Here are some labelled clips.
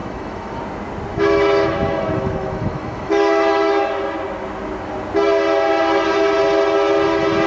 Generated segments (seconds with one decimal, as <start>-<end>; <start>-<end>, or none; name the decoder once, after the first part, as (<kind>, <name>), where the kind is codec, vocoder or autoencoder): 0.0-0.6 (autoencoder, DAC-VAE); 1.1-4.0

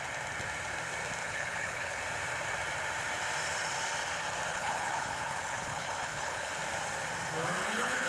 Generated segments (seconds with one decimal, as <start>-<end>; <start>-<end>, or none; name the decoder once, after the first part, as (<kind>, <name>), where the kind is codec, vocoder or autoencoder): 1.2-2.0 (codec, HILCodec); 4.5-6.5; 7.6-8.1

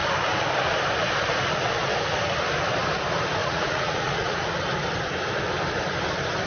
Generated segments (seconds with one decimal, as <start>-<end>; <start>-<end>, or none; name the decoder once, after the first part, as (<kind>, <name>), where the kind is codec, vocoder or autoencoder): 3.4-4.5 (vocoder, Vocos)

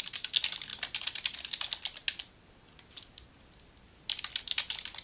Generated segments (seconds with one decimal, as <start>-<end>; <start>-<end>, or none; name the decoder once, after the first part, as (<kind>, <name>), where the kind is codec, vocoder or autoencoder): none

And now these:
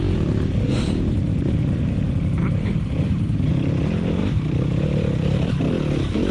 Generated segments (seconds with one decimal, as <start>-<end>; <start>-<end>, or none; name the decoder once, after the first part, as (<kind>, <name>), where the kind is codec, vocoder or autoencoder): 1.3-3.5 (vocoder, BigVGAN v2)